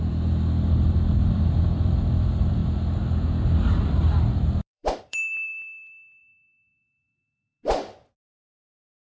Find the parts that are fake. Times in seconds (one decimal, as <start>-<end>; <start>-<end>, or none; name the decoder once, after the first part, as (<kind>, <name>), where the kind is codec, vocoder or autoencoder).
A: 0.0-2.6 (vocoder, BigVGAN v2); 3.6-6.3; 8.3-9.0

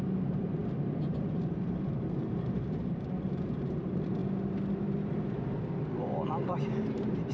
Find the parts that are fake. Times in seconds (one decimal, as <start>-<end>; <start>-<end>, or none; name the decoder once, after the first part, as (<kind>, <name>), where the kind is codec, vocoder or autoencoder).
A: 0.0-4.2 (vocoder, BigVGAN v2); 5.0-7.3

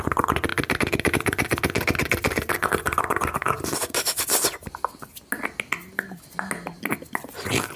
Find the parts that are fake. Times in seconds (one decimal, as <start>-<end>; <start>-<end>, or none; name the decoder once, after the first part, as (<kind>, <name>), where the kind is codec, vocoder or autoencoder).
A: none

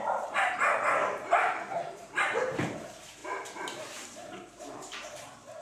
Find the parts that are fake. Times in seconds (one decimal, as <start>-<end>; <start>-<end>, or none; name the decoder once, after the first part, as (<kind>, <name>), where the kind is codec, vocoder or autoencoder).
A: 0.0-1.0 (vocoder, BigVGAN v2); 1.7-5.6

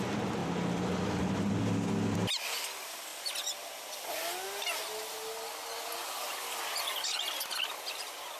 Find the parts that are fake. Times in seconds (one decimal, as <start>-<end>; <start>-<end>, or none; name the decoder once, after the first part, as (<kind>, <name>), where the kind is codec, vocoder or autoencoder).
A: 0.4-2.5 (vocoder, BigVGAN v2)

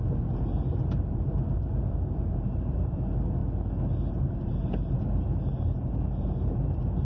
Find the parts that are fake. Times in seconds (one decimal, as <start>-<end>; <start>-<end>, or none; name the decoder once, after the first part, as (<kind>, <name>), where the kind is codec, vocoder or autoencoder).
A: 0.0-3.4 (vocoder, BigVGAN v2); 4.1-7.0

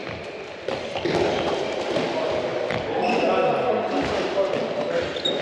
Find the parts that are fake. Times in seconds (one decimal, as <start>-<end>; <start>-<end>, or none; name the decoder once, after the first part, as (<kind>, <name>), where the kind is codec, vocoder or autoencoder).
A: none